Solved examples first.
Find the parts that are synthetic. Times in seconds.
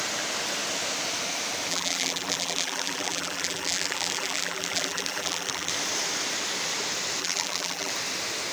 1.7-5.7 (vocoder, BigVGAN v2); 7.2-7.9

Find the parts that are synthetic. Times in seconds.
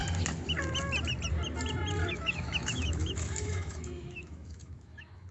2.0-5.3 (autoencoder, DAC-VAE)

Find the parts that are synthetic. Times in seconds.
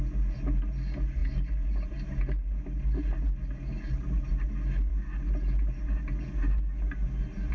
none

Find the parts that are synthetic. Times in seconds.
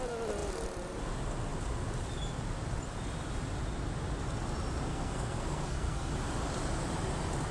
4.9-6.1 (codec, SNAC)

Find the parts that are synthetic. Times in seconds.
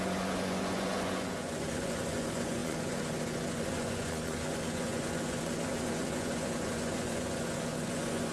0.0-8.3 (vocoder, Vocos)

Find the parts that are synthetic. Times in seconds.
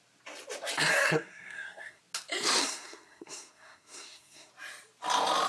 0.9-2.0 (codec, SNAC); 2.6-4.5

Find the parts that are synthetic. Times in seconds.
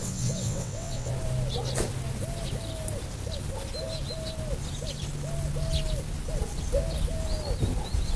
0.0-1.1 (vocoder, WaveNeXt)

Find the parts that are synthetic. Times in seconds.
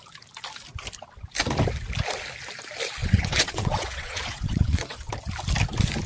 3.0-5.1 (vocoder, WaveNeXt)